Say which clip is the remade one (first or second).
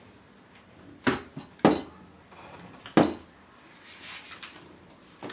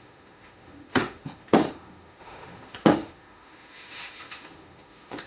second